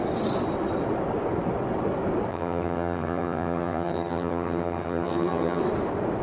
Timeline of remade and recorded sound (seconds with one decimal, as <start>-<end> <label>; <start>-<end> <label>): 0.0-2.3 recorded; 2.3-5.6 remade; 5.6-6.2 recorded

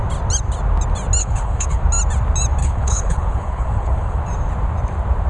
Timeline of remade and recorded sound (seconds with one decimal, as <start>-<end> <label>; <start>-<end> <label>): 0.0-1.2 recorded; 1.2-1.8 remade; 1.8-2.6 recorded; 2.6-4.2 remade; 4.2-5.3 recorded

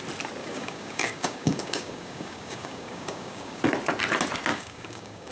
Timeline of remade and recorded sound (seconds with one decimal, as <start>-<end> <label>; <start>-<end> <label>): 0.0-0.4 recorded; 0.4-3.6 remade; 3.6-4.5 recorded; 4.5-5.3 remade

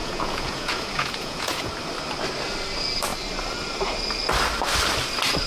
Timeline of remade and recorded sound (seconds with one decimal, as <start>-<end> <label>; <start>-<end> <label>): 0.0-1.7 remade; 1.7-5.5 recorded

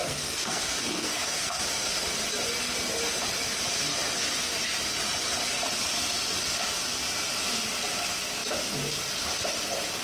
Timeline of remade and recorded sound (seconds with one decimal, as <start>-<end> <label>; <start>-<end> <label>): 0.0-1.6 remade; 1.6-10.0 recorded